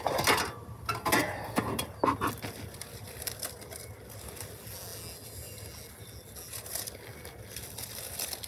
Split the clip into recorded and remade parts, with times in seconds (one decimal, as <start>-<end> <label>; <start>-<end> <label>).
0.0-8.5 recorded